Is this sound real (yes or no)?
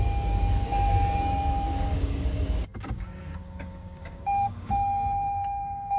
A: no